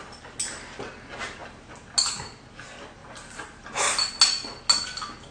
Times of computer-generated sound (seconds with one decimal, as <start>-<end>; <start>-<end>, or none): 3.0-3.7